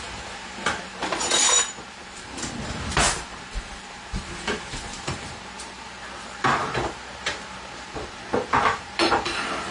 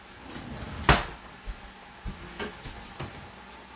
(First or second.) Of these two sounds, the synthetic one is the first